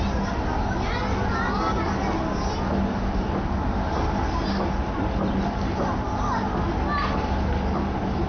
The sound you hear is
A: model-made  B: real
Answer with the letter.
B